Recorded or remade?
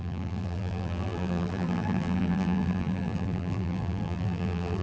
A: remade